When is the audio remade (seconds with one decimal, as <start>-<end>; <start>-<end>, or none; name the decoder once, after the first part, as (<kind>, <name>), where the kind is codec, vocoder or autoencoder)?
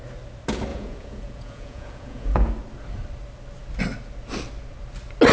0.7-2.5 (vocoder, Vocos)